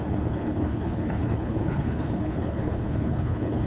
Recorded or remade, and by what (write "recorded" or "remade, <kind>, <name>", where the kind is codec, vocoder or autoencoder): remade, codec, HILCodec